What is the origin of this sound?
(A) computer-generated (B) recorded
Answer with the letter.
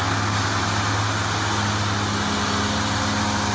B